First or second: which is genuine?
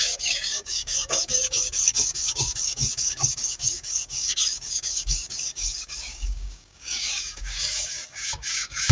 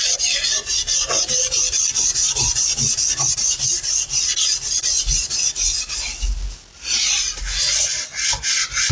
second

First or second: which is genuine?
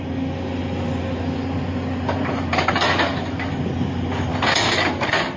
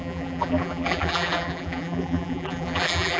first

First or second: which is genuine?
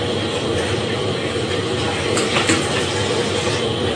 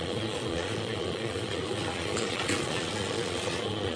first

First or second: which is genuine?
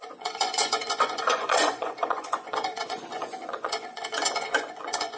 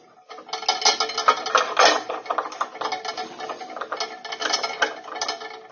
second